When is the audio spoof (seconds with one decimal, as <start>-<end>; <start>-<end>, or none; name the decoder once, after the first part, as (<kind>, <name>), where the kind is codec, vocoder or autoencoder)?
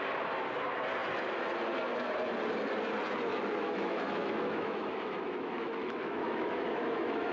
3.3-7.3 (autoencoder, DAC-VAE)